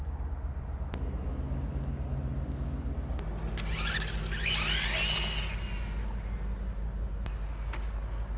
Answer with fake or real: real